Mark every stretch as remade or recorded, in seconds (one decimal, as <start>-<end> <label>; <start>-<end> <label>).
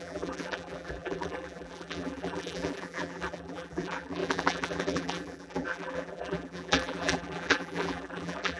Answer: 0.0-8.6 remade